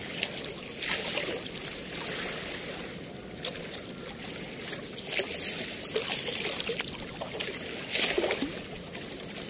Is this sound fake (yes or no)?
no